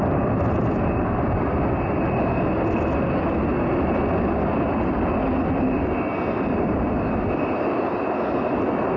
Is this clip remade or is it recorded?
recorded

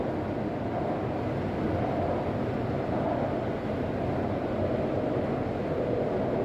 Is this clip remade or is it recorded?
recorded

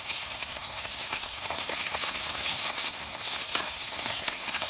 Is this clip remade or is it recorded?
remade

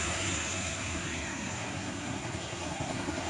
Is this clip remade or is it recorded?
remade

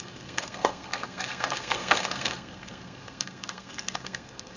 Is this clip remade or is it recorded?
remade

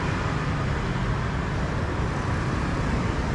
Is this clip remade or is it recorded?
recorded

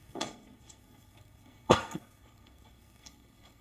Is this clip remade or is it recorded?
remade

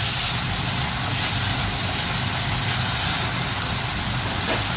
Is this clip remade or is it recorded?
recorded